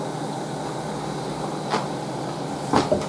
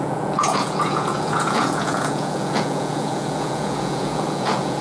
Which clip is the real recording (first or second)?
first